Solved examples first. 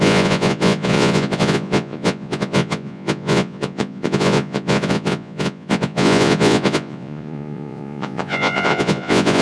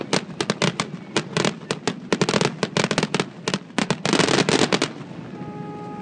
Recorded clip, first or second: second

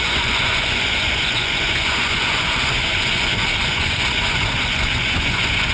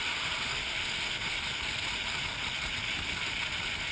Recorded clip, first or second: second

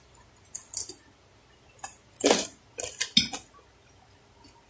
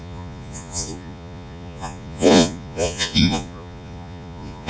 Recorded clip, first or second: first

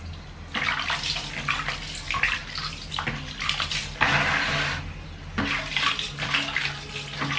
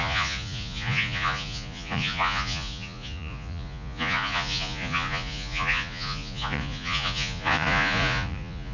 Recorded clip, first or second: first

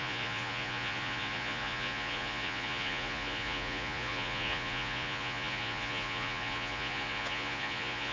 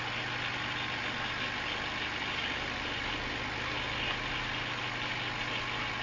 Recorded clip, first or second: second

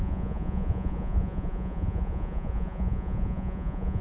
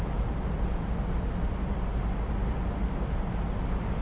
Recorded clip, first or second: second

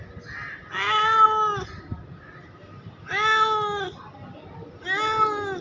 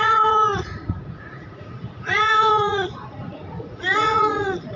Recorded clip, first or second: first